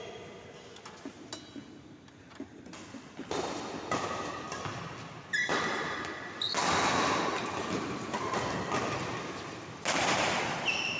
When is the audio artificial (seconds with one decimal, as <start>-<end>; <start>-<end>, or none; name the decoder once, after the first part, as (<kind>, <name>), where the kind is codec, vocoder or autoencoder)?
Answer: none